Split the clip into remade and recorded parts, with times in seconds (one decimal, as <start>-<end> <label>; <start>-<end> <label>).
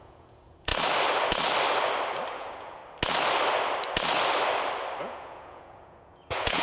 0.0-0.7 remade; 0.7-2.3 recorded; 2.3-2.8 remade; 2.8-5.0 recorded; 5.0-6.6 remade